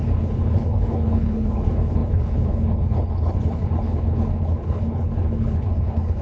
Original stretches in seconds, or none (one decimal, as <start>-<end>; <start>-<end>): none